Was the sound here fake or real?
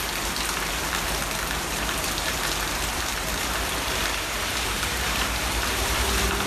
fake